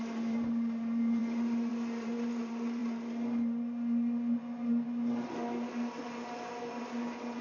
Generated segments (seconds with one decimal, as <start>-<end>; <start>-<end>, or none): none